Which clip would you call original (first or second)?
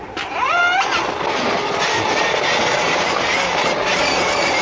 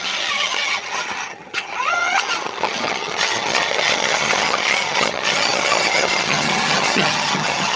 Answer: first